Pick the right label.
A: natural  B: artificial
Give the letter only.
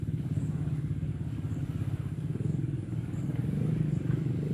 B